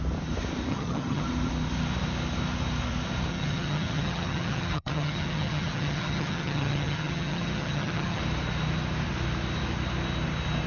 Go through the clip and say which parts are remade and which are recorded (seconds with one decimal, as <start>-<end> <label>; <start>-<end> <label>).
0.0-0.7 recorded; 0.7-1.2 remade; 1.2-3.3 recorded; 3.3-8.2 remade; 8.2-10.7 recorded